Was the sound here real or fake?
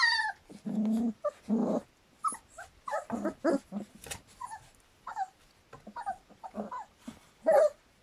real